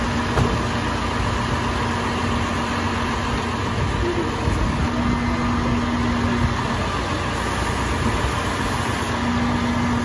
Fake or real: real